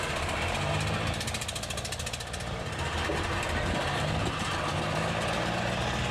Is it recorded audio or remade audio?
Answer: recorded